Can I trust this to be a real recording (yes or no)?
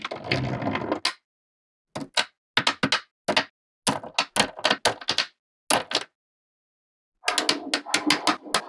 yes